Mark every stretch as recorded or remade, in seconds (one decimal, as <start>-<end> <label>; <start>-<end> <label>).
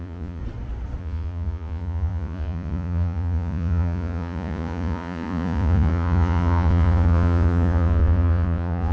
0.0-0.4 remade; 0.4-1.0 recorded; 1.0-8.9 remade